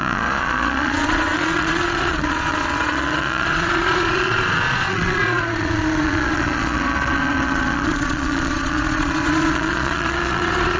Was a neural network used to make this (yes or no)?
yes